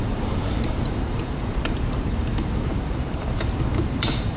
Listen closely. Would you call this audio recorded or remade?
remade